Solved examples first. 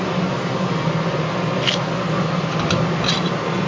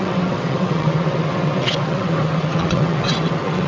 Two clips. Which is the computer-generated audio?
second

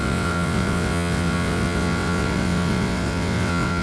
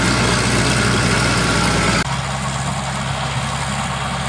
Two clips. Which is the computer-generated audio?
first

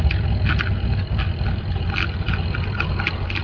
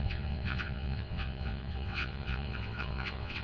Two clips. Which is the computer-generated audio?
second